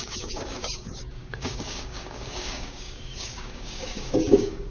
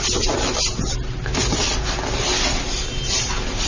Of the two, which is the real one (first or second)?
second